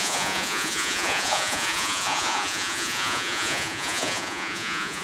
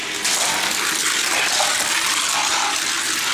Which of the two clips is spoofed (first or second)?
first